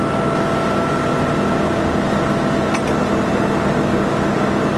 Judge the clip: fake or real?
real